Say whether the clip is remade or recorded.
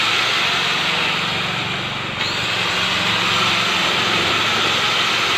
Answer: recorded